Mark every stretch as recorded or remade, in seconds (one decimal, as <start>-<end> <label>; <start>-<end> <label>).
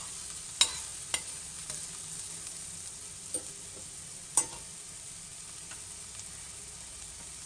0.0-7.5 recorded